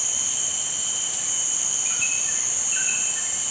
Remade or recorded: recorded